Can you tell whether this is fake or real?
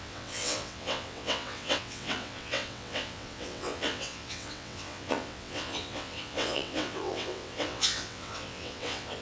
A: fake